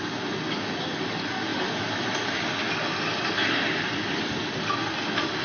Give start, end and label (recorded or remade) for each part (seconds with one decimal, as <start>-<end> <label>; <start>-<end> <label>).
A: 0.0-1.5 recorded; 1.5-4.4 remade; 4.4-5.4 recorded